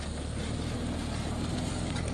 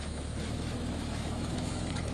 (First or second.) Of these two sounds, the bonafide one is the first